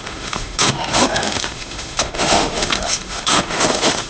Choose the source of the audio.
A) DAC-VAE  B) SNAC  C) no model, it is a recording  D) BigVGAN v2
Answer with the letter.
A